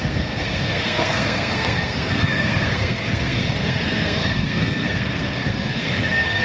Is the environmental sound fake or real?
fake